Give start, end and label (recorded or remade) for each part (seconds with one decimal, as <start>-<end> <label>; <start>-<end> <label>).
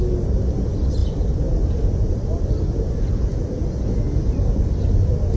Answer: 0.0-5.4 recorded